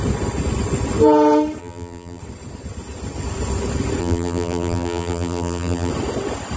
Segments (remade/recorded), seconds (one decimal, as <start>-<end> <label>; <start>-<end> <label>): 0.0-1.6 recorded; 1.6-2.2 remade; 2.2-4.0 recorded; 4.0-5.9 remade; 5.9-6.6 recorded